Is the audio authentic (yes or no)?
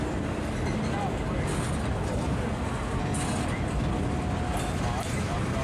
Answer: yes